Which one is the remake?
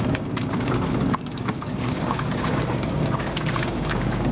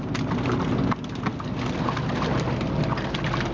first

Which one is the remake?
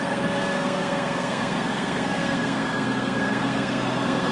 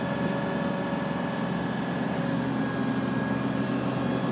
first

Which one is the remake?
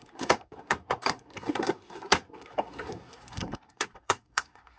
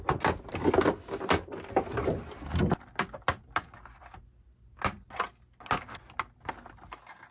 first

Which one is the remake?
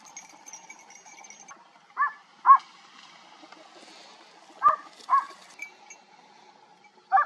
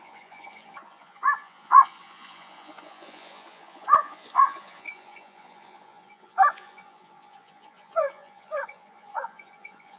second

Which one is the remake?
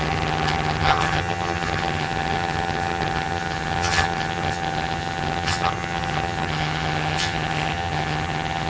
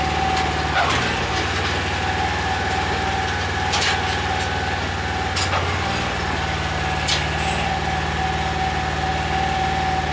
first